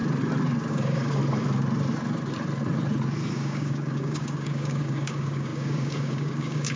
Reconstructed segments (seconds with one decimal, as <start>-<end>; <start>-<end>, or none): 0.7-1.2; 3.3-6.8